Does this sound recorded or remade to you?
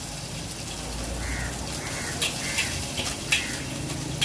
recorded